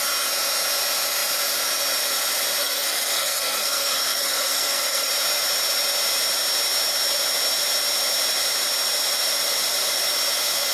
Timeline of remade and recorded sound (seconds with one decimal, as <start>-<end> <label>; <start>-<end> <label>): 0.0-2.6 recorded; 2.6-5.1 remade; 5.1-10.7 recorded